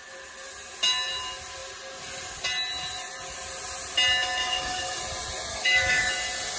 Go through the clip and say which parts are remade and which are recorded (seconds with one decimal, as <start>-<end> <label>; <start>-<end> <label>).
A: 0.0-4.4 recorded; 4.4-5.0 remade; 5.0-5.5 recorded; 5.5-6.1 remade; 6.1-6.6 recorded